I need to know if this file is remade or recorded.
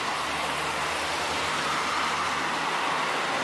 recorded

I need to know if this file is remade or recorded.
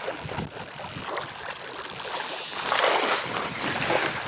recorded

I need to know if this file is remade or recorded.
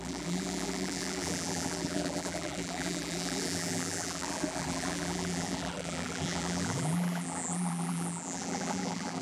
remade